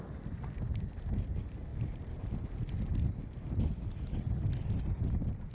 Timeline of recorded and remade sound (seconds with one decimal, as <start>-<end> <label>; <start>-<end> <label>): 0.0-5.5 recorded